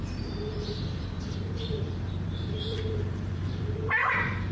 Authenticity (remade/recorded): remade